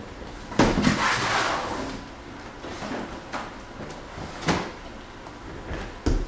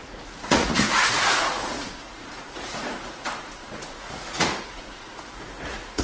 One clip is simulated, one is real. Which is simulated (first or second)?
second